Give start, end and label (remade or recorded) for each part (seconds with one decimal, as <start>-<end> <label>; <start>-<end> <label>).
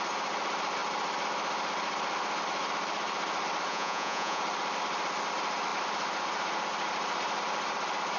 0.0-3.7 recorded; 3.7-4.4 remade; 4.4-8.2 recorded